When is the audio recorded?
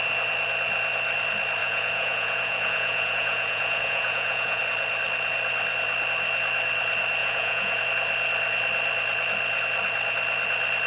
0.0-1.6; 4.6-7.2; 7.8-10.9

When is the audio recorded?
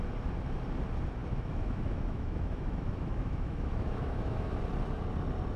0.0-1.2; 4.6-5.6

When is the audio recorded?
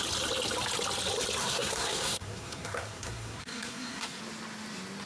0.0-1.4; 4.2-5.1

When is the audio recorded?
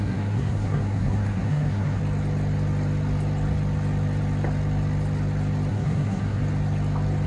2.0-5.7; 6.4-7.3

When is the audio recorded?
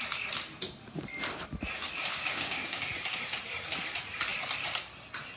0.0-2.1; 3.0-5.4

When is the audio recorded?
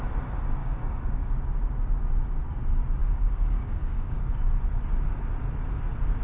0.0-0.6; 1.3-3.0; 4.2-6.2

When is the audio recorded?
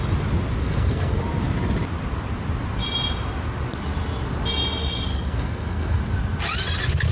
0.0-0.6; 1.2-5.1; 6.0-7.1